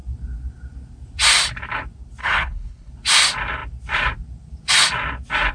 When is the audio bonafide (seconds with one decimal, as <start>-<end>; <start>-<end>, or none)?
0.0-2.2; 2.9-5.5